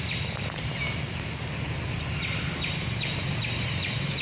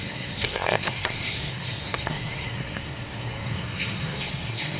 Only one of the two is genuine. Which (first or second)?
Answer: first